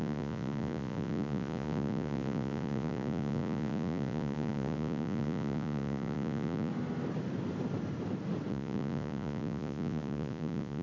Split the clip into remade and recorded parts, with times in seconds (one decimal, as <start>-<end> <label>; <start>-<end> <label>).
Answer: 0.0-6.7 remade; 6.7-8.5 recorded; 8.5-10.8 remade